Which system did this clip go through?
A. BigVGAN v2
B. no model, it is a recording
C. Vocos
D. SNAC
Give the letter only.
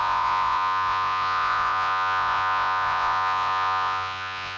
C